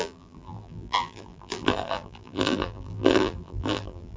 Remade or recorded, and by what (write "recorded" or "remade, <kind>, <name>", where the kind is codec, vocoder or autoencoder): remade, vocoder, BigVGAN v2